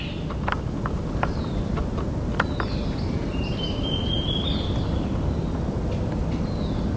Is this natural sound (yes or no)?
yes